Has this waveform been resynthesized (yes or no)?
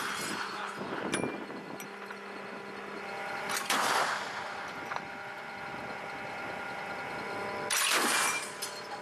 no